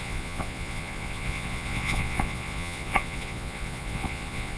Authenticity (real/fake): fake